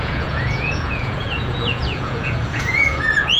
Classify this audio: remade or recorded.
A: remade